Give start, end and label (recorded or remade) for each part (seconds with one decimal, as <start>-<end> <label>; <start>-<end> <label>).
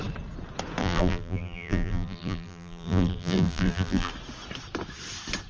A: 0.0-0.8 recorded; 0.8-4.1 remade; 4.1-5.5 recorded